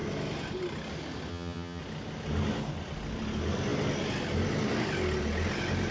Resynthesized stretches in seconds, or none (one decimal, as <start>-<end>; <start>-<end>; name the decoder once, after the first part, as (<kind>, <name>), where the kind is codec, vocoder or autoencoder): 1.3-1.8 (vocoder, HiFi-GAN)